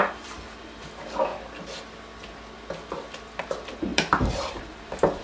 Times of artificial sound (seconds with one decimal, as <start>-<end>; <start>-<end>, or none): 0.0-1.3; 3.4-5.2